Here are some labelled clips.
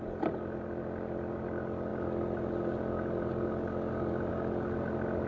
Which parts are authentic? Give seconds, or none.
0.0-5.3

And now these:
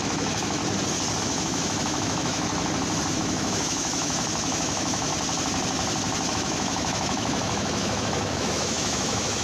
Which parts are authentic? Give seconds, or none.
0.6-1.2; 2.5-3.1; 5.1-6.3

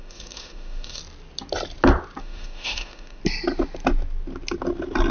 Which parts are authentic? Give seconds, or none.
1.0-2.2; 3.2-5.1